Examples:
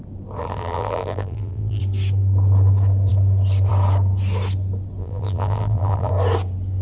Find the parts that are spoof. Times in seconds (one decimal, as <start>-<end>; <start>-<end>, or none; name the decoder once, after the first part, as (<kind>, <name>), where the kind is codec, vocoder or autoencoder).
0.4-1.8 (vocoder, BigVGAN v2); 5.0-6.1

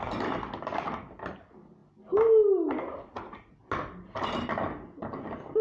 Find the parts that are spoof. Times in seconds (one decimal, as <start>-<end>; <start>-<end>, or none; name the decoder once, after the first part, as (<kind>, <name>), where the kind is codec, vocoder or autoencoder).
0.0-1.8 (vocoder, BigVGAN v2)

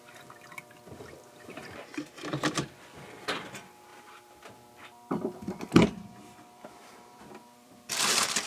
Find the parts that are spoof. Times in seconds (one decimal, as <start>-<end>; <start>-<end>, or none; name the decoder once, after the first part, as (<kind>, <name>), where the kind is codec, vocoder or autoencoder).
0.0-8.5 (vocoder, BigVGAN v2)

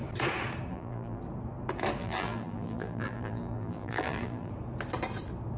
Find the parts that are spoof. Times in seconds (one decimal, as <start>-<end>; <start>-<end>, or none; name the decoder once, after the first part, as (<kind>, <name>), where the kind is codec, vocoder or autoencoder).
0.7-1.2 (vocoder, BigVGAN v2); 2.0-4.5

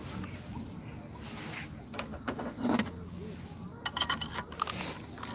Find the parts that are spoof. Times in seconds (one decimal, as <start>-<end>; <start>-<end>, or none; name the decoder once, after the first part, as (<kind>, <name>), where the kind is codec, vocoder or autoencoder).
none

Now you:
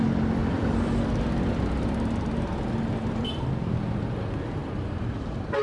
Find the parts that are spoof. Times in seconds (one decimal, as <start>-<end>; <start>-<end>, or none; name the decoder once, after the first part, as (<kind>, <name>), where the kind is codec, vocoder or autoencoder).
0.4-3.5 (vocoder, BigVGAN v2); 4.6-5.6